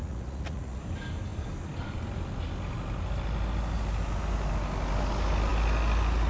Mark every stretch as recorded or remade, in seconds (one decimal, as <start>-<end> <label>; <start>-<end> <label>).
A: 0.0-0.8 remade; 0.8-6.3 recorded